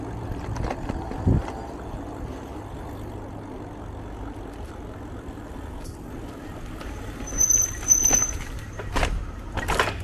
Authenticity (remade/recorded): recorded